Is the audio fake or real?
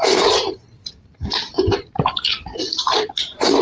fake